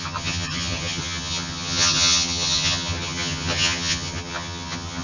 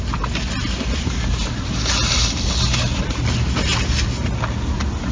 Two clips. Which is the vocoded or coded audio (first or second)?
first